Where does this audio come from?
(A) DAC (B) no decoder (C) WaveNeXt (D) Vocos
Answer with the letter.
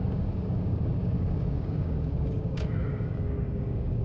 A